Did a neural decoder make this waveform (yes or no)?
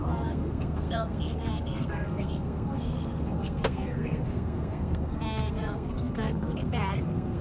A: yes